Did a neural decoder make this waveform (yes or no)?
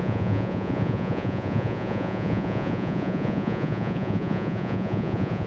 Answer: yes